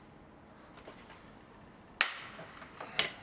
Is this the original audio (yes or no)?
yes